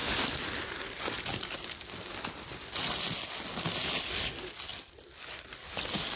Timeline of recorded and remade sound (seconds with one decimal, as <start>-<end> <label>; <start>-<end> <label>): 0.0-6.2 recorded